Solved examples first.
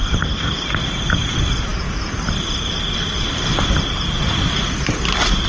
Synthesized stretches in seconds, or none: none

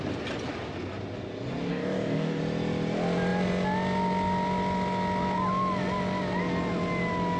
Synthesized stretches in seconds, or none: 1.7-2.4 (codec, DAC)

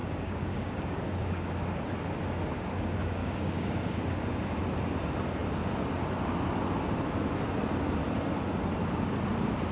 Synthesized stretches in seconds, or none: 0.0-1.5 (codec, DAC); 3.2-4.0

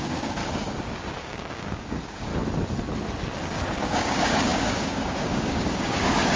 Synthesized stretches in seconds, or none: 0.0-0.4 (codec, DAC); 1.2-2.3; 3.4-6.4

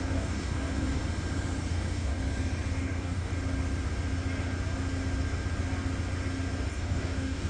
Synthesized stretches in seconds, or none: 0.0-1.0 (codec, DAC); 1.7-2.2; 2.7-3.3; 6.7-7.5